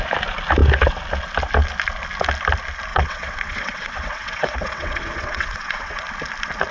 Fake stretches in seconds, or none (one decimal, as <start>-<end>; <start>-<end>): 2.9-6.0